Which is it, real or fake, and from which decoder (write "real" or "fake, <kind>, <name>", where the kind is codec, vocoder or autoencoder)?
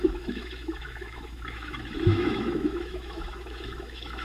fake, autoencoder, DAC-VAE